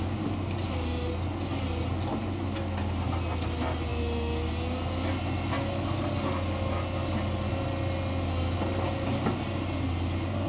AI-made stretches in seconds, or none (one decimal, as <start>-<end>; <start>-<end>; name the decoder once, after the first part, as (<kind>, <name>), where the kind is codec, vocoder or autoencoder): none